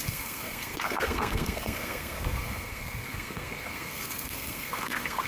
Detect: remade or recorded remade